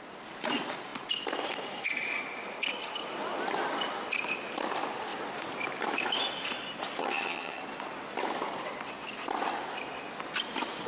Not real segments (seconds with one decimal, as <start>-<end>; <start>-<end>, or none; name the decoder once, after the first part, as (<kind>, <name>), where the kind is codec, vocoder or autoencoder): 7.0-7.6 (vocoder, HiFi-GAN)